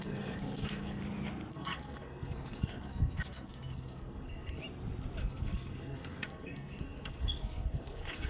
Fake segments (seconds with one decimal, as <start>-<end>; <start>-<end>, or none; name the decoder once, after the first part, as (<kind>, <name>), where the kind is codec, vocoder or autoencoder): 0.0-1.0 (codec, SNAC); 1.5-4.6; 5.2-8.3

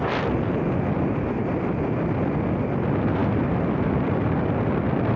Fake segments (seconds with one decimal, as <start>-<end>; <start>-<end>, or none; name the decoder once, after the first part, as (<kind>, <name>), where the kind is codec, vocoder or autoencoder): none